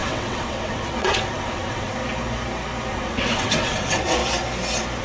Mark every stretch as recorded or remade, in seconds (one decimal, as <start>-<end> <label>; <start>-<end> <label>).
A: 0.0-2.0 remade; 2.0-2.9 recorded; 2.9-4.2 remade; 4.2-5.0 recorded